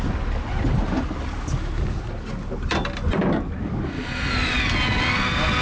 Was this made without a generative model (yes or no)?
yes